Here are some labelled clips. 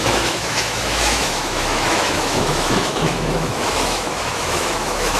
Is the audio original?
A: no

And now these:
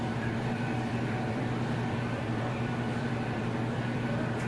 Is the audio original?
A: no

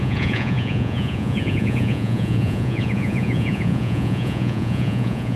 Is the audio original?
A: no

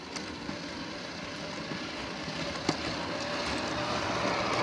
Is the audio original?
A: yes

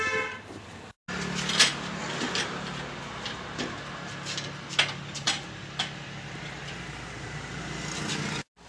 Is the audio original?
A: yes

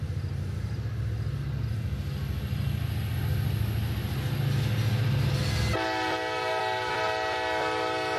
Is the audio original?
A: yes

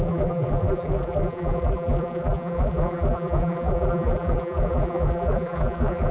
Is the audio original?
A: no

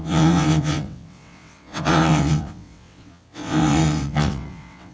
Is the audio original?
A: no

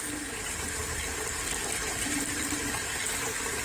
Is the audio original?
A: yes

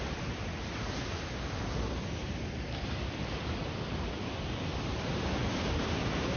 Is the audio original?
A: no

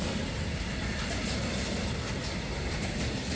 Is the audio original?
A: yes